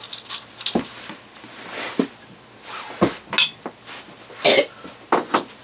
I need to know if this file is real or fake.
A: real